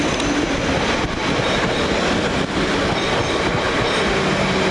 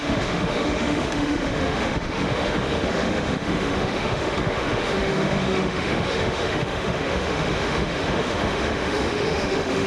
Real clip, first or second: first